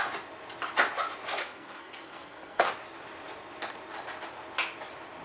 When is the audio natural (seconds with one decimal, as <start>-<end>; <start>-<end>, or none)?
0.0-1.4; 2.7-5.2